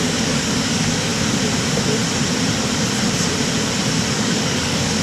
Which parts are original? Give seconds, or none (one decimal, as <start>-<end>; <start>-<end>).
1.1-4.1